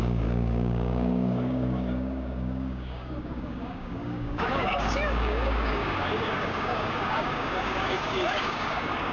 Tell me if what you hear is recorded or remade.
remade